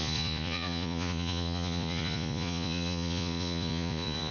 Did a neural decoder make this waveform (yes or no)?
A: yes